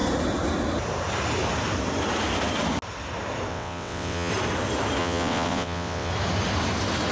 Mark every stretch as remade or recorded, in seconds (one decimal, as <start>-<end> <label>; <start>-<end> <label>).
0.0-3.5 recorded; 3.5-4.3 remade; 4.3-5.0 recorded; 5.0-6.1 remade; 6.1-7.1 recorded